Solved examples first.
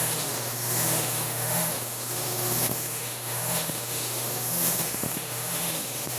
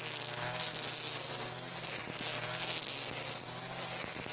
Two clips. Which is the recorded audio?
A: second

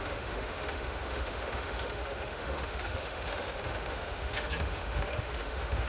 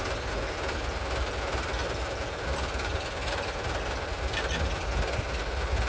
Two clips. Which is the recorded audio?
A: second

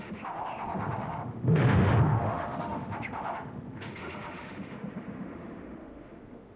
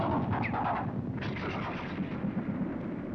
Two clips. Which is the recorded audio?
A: second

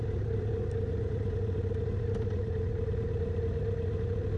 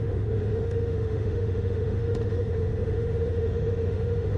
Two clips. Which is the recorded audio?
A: first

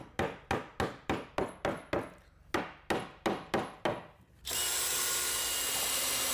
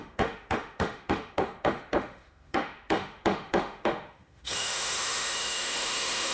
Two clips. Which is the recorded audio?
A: first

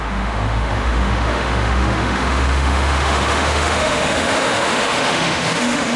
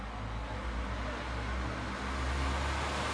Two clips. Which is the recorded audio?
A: second